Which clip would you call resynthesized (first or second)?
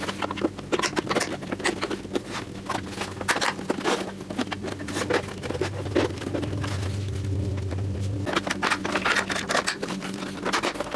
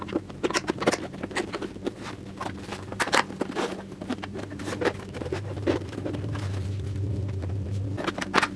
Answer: second